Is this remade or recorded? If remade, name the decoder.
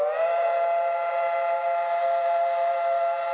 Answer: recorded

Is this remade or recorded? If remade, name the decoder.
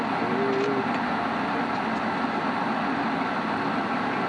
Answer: recorded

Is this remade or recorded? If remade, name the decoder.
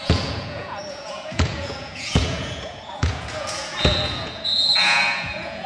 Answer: remade, vocoder, Vocos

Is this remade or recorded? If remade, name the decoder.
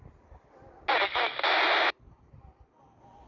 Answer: recorded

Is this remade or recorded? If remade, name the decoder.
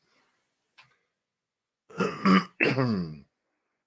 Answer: remade, vocoder, Vocos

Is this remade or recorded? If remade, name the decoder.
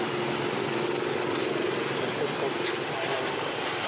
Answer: recorded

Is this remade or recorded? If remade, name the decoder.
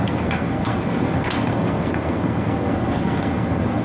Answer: remade, codec, SNAC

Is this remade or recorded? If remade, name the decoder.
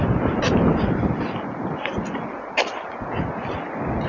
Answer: recorded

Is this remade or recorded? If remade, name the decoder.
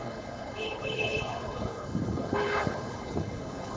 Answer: remade, codec, HILCodec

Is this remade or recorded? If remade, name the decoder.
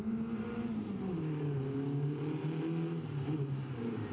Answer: recorded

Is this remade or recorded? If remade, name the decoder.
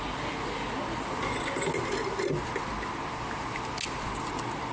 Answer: recorded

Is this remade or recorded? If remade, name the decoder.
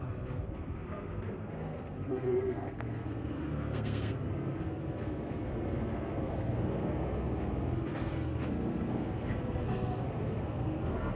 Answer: remade, codec, SNAC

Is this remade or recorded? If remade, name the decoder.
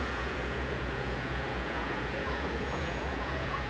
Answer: remade, vocoder, Vocos